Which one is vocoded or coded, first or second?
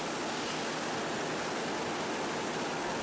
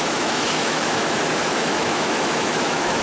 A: second